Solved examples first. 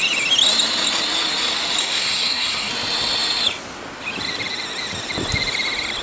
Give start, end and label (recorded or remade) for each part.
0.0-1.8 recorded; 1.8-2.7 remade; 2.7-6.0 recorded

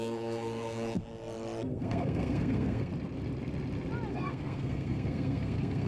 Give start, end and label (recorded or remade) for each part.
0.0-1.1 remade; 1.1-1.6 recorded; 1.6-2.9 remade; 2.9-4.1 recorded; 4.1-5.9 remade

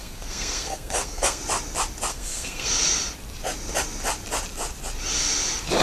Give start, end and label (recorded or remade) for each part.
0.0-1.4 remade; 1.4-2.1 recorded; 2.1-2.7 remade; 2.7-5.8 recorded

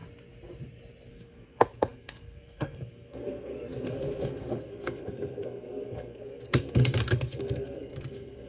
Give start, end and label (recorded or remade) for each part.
0.0-1.1 recorded; 1.1-8.5 remade

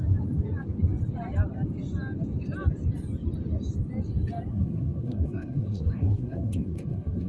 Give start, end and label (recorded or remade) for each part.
0.0-4.5 recorded; 4.5-7.3 remade

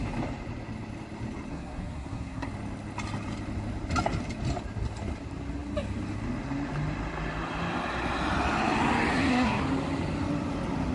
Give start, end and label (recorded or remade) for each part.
0.0-1.5 recorded; 1.5-2.5 remade; 2.5-9.1 recorded; 9.1-9.6 remade; 9.6-10.9 recorded

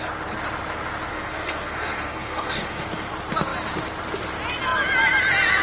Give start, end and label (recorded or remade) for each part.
0.0-1.1 recorded; 1.1-3.1 remade; 3.1-5.6 recorded

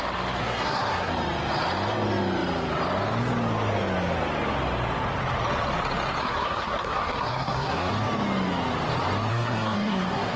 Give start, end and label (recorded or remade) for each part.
0.0-0.4 recorded; 0.4-1.1 remade; 1.1-6.2 recorded; 6.2-7.9 remade; 7.9-9.3 recorded; 9.3-10.4 remade